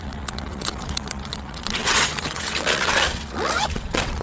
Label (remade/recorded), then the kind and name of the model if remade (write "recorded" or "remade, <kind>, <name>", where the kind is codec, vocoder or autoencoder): remade, vocoder, WaveNeXt